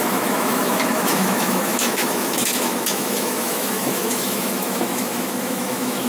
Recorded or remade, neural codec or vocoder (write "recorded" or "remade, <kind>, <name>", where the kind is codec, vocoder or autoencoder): remade, autoencoder, DAC-VAE